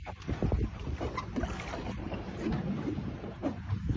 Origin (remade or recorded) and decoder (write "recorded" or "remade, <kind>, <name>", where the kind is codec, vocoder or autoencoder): recorded